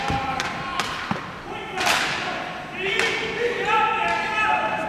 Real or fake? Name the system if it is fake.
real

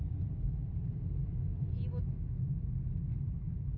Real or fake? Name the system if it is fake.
real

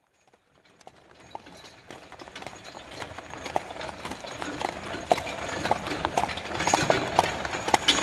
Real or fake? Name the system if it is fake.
real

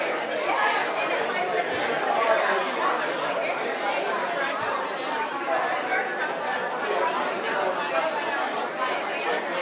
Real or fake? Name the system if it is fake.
fake, vocoder, BigVGAN v2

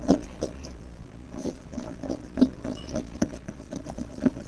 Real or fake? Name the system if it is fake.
fake, vocoder, Vocos